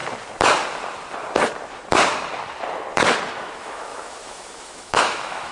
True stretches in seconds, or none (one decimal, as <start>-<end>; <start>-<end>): 0.0-3.3